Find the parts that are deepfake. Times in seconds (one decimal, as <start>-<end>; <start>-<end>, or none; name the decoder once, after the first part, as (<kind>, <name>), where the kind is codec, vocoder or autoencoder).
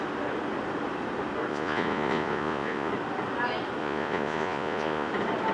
1.5-2.9 (vocoder, Vocos); 3.8-5.1